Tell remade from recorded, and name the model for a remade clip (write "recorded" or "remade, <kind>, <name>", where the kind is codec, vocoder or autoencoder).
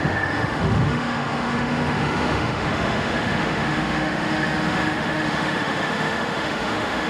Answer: remade, autoencoder, DAC-VAE